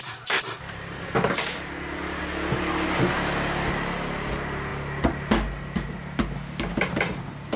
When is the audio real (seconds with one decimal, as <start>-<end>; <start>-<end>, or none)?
0.0-7.6